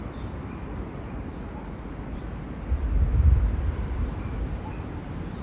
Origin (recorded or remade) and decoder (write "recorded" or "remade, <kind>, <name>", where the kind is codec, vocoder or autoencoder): recorded